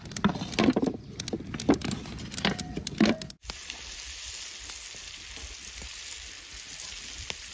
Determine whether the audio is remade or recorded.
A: recorded